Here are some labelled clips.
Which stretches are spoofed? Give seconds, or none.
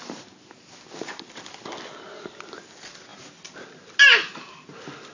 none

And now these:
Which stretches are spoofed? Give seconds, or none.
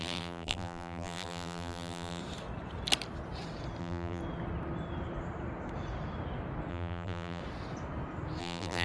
0.0-2.2 (vocoder, BigVGAN v2); 3.8-4.2; 6.7-7.4; 8.4-8.8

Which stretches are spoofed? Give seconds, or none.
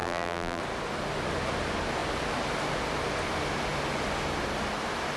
0.0-0.6 (vocoder, BigVGAN v2)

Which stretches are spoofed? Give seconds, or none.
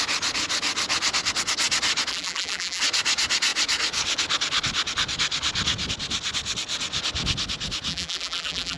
2.1-2.8 (vocoder, BigVGAN v2); 7.9-8.8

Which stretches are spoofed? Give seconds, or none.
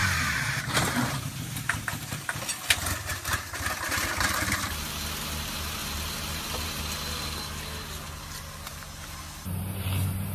0.0-2.2 (vocoder, BigVGAN v2); 5.8-6.8